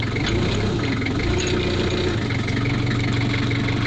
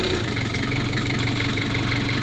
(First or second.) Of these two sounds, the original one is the first